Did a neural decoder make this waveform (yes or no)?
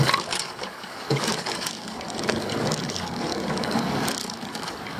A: yes